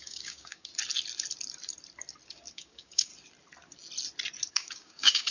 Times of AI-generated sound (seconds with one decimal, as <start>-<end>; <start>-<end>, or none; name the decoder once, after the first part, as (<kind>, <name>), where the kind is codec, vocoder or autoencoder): 0.0-0.7 (codec, DAC); 2.5-3.1; 4.5-5.3